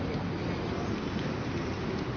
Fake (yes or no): no